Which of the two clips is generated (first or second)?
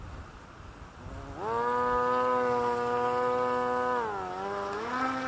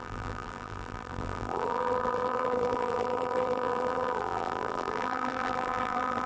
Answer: second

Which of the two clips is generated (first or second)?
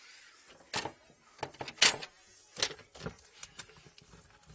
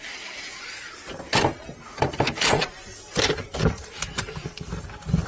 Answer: second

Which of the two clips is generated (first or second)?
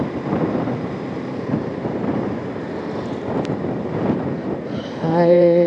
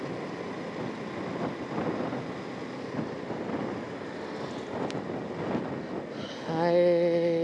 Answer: first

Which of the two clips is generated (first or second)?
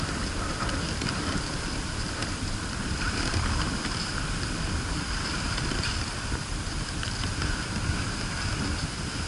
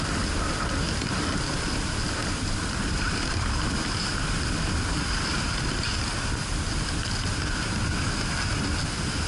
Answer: first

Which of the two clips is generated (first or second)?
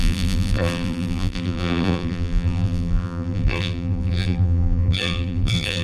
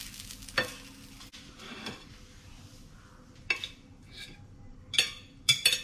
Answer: first